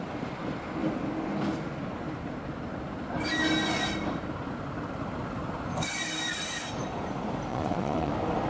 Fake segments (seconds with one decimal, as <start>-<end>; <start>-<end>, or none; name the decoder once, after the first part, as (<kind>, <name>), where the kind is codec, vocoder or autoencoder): 7.5-8.1 (vocoder, Vocos)

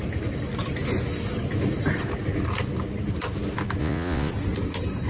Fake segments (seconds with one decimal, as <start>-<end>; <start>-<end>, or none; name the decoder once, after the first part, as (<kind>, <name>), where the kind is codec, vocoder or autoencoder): 3.8-4.3 (vocoder, Vocos)

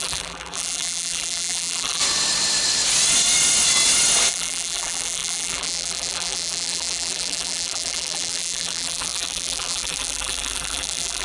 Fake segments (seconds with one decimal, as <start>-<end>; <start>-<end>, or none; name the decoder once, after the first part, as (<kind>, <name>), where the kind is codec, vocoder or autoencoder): 0.0-2.0 (vocoder, BigVGAN v2); 4.3-11.2

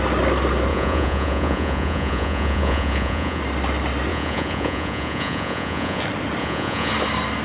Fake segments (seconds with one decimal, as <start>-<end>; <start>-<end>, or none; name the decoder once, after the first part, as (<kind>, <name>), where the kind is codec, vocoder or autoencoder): 0.7-3.4 (vocoder, Vocos); 4.1-6.0; 6.4-6.9

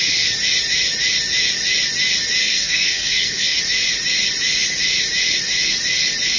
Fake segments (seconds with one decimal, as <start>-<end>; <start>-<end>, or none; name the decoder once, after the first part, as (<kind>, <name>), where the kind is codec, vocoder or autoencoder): 2.4-3.6 (codec, SNAC)

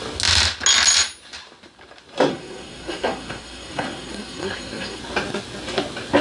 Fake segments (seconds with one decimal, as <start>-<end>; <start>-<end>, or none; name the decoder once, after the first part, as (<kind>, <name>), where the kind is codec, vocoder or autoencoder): 2.3-5.0 (codec, SNAC)

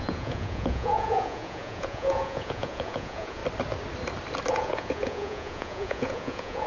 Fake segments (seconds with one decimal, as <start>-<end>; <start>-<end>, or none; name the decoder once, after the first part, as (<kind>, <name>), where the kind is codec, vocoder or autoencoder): 0.0-3.4 (vocoder, Vocos); 4.5-6.7

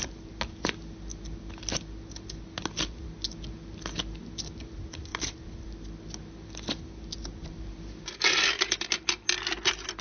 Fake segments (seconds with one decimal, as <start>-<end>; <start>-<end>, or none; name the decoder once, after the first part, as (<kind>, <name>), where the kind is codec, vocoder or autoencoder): none